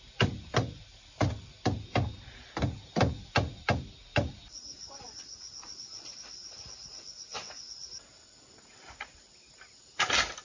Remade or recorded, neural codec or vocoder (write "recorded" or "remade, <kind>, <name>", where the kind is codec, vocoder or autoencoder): recorded